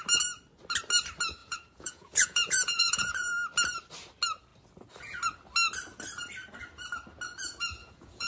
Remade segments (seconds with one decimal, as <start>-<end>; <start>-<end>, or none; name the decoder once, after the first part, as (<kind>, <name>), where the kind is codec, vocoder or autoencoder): 1.4-3.3 (vocoder, Vocos); 7.8-8.3